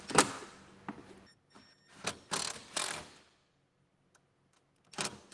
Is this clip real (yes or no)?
yes